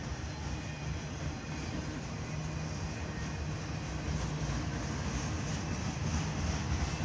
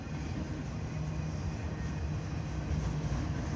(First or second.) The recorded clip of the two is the first